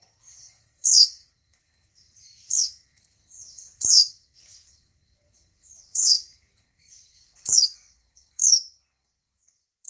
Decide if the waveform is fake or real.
fake